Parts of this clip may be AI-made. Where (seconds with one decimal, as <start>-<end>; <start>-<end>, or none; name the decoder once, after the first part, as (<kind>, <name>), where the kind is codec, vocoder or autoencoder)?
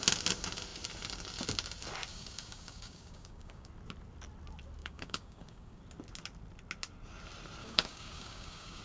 2.1-3.7 (codec, DAC); 4.8-5.8; 7.6-8.8